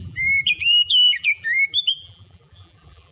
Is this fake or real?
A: fake